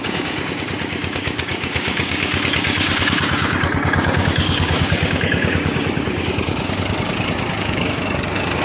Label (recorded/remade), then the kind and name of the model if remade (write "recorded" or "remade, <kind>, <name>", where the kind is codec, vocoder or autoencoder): remade, codec, DAC